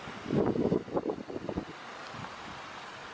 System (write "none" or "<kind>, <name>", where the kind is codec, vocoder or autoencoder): none